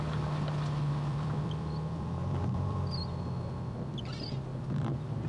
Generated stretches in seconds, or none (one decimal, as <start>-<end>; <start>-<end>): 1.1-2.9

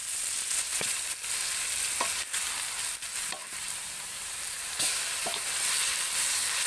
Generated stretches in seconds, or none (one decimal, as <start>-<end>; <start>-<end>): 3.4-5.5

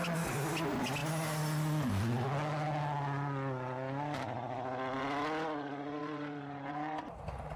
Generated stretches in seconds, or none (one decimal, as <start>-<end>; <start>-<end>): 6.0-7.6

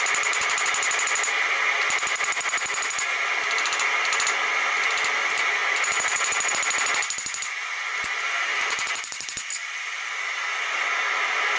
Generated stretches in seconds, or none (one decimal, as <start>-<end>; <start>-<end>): 5.6-6.5